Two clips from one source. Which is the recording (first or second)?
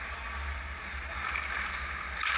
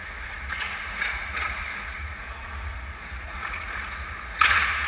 first